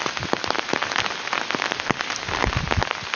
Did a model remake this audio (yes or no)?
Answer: no